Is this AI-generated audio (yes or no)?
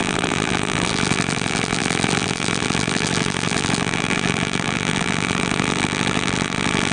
yes